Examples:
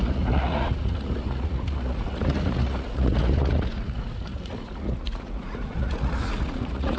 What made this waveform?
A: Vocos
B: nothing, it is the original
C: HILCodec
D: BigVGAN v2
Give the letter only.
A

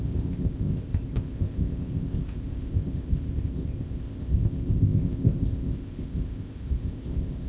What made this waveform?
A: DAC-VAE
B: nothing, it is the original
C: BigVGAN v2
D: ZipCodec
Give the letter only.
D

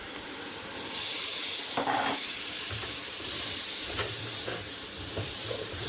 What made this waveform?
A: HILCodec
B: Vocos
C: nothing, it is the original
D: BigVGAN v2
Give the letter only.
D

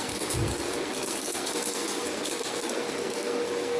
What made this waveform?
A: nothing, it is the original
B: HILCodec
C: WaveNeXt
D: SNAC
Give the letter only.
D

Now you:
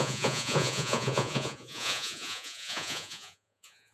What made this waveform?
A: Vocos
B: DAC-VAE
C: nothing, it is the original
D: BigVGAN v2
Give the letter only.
A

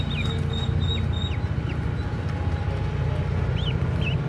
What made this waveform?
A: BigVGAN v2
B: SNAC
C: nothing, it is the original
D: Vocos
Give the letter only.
C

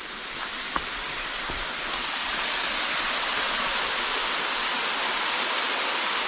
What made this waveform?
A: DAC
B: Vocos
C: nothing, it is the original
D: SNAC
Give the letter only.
C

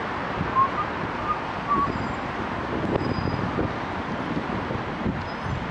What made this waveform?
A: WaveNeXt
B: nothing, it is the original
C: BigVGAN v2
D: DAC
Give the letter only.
B